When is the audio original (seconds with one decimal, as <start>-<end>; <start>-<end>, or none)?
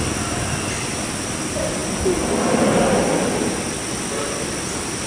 0.0-5.1